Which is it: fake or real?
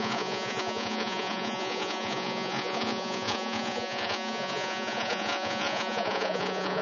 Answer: fake